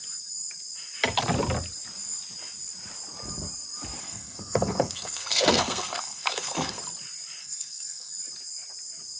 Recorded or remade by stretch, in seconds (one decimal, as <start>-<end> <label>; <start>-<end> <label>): 0.0-4.0 recorded; 4.0-6.8 remade; 6.8-7.4 recorded; 7.4-8.1 remade; 8.1-9.2 recorded